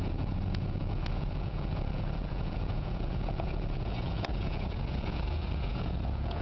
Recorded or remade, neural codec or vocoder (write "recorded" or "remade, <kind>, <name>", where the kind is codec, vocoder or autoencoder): remade, vocoder, Vocos